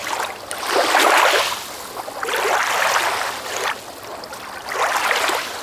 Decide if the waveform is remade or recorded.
recorded